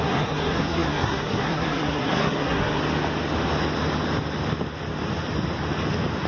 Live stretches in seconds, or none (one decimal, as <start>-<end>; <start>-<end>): 2.8-6.3